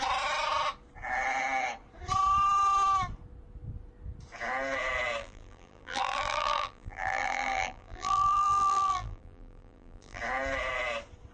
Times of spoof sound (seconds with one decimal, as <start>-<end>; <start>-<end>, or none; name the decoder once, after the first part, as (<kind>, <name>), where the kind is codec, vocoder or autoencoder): 5.2-10.2 (vocoder, BigVGAN v2)